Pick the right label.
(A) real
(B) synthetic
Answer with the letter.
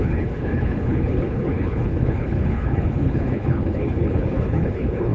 B